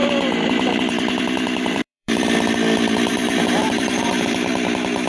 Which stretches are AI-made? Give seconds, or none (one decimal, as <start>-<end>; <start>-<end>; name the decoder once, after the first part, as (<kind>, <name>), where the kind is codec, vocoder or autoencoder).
0.0-2.2 (vocoder, BigVGAN v2); 3.1-4.5